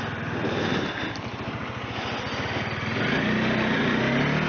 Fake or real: real